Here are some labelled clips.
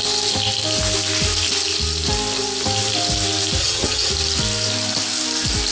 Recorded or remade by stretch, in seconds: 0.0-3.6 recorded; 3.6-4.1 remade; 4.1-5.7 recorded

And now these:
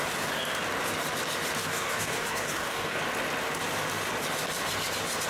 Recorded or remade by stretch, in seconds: 0.0-1.6 recorded; 1.6-3.0 remade; 3.0-5.3 recorded

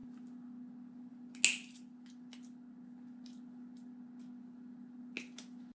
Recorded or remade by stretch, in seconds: 0.0-5.8 recorded